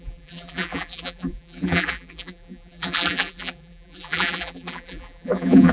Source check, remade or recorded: remade